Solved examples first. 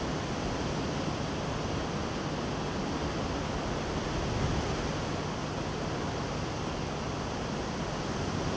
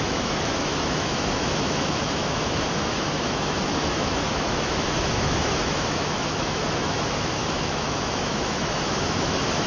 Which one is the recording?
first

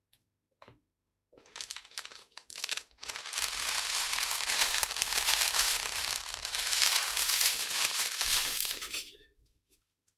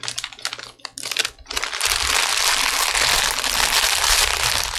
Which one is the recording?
second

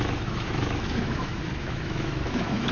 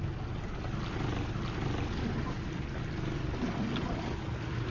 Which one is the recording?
second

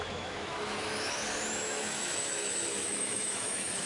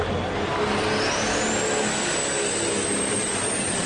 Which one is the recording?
second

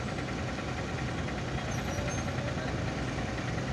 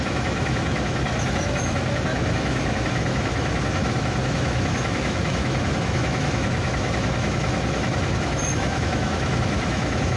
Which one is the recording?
first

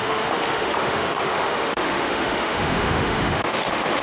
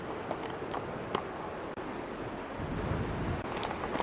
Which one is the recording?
second